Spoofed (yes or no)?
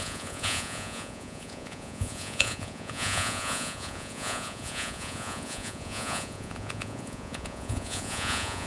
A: yes